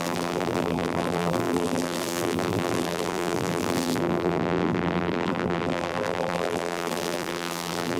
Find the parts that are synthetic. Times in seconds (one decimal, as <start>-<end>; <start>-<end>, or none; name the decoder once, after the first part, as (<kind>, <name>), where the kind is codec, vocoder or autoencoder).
0.0-8.0 (vocoder, BigVGAN v2)